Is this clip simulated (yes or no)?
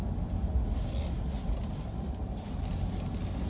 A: no